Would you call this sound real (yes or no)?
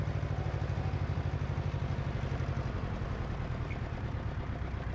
yes